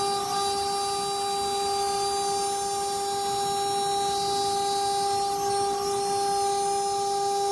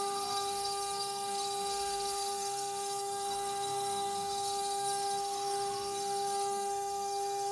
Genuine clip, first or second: first